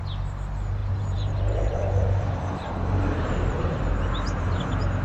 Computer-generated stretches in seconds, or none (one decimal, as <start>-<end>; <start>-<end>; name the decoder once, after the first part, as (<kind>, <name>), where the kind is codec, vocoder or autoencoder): 0.8-3.8 (vocoder, BigVGAN v2)